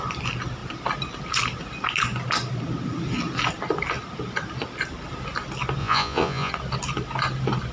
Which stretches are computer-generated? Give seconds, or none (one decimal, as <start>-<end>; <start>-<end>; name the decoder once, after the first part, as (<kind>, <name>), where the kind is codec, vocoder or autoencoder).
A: 5.8-6.5 (vocoder, Vocos)